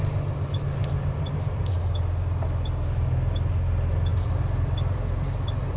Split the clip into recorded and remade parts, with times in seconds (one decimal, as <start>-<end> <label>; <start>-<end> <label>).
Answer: 0.0-0.8 recorded; 0.8-1.7 remade; 1.7-4.1 recorded; 4.1-5.8 remade